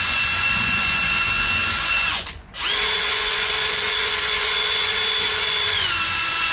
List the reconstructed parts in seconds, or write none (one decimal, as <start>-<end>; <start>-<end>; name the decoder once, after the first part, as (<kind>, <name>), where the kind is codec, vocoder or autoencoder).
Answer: 0.0-6.5 (vocoder, Vocos)